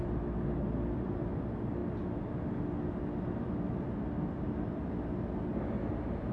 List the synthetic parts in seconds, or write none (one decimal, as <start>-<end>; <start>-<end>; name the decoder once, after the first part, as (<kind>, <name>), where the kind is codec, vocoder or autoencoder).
none

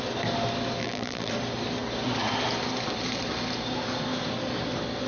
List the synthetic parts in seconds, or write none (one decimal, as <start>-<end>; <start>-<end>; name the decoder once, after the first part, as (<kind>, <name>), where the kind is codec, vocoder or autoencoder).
0.8-1.3 (vocoder, BigVGAN v2)

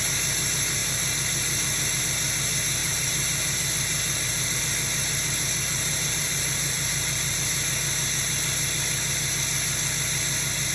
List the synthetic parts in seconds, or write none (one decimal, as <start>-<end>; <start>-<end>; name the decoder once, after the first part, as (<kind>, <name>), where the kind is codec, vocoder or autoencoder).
2.8-4.6 (vocoder, BigVGAN v2); 5.7-7.4

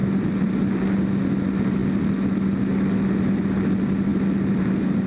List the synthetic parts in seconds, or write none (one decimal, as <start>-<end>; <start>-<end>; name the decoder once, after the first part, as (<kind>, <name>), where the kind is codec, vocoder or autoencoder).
0.0-0.8 (vocoder, BigVGAN v2); 4.1-5.1